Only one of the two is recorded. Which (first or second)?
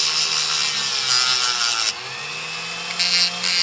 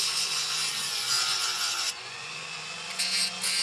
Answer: first